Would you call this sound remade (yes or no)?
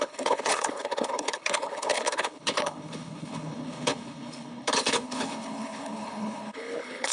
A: yes